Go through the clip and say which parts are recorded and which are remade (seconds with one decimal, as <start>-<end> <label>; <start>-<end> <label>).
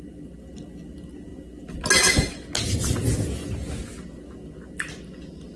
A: 0.0-5.6 recorded